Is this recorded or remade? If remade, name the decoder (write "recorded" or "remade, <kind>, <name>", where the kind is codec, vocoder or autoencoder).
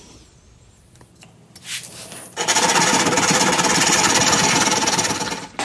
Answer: recorded